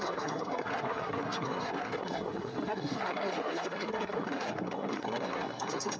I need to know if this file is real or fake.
fake